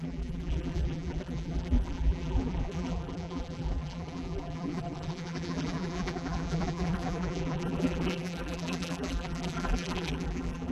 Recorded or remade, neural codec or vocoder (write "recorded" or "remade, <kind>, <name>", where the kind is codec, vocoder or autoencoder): remade, vocoder, BigVGAN v2